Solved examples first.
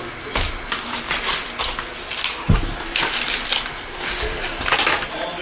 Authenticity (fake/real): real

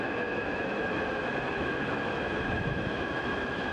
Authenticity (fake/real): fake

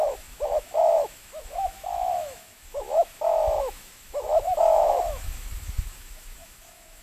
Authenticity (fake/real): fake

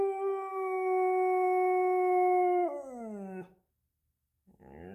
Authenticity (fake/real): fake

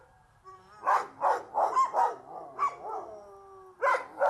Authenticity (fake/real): real